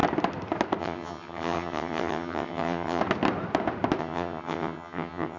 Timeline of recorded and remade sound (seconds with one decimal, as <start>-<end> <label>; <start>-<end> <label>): 0.0-0.8 recorded; 0.8-3.0 remade; 3.0-4.0 recorded; 4.0-5.4 remade